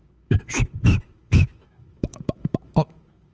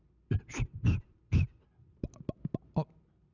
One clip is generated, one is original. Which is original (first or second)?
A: second